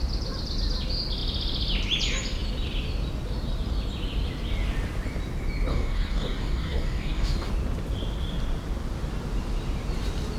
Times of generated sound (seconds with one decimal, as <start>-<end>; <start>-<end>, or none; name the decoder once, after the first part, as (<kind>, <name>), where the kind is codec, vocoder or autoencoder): 5.7-7.5 (codec, DAC)